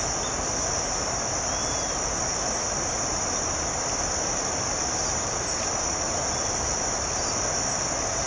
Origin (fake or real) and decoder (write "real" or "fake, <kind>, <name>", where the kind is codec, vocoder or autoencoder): real